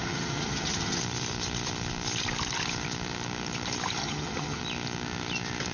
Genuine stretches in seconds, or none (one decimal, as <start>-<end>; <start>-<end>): 1.0-4.0; 4.6-5.7